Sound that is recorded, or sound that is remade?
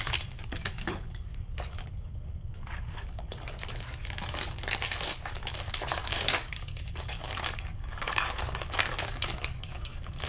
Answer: remade